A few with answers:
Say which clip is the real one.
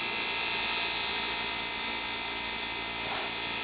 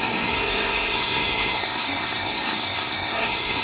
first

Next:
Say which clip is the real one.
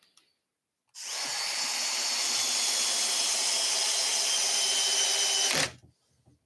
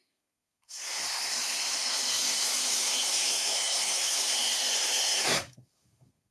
first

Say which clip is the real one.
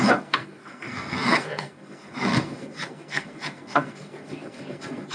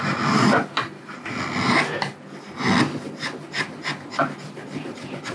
second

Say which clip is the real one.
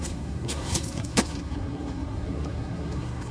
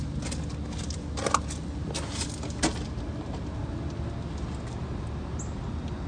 second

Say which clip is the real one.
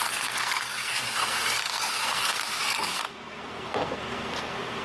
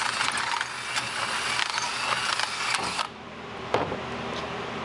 second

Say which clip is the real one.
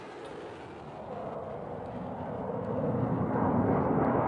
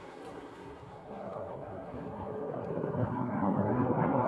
first